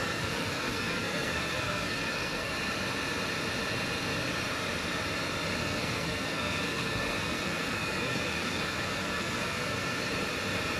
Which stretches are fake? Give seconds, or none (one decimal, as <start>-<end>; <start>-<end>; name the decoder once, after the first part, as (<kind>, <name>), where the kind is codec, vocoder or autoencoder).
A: 0.0-2.5 (codec, SNAC); 5.6-10.0